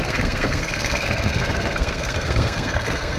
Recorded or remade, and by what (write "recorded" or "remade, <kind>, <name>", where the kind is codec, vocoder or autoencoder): remade, codec, SNAC